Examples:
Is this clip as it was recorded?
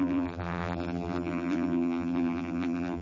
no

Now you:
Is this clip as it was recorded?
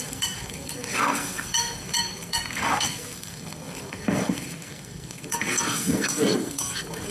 no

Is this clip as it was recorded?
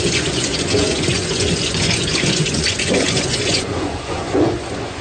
no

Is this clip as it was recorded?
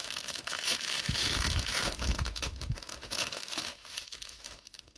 no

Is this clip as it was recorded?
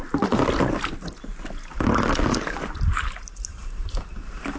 yes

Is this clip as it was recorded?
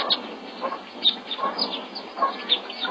yes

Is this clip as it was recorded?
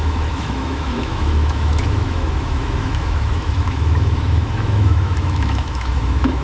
no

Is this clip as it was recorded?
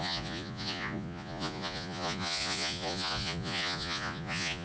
no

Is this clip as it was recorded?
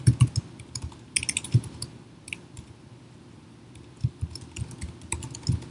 yes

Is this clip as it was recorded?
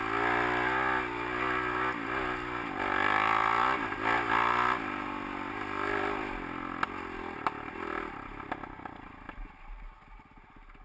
yes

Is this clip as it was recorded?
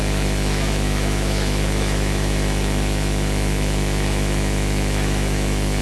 no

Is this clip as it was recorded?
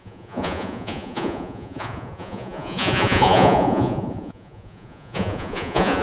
no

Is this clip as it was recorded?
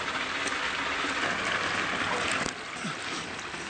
yes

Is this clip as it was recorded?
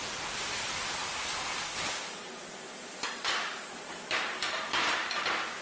yes